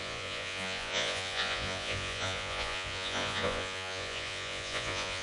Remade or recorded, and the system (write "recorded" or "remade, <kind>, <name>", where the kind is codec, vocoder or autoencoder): remade, vocoder, Vocos